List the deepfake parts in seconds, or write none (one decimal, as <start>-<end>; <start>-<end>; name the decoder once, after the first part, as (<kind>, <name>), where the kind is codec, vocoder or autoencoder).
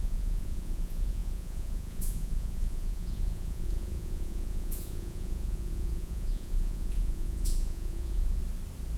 0.0-8.4 (vocoder, Vocos)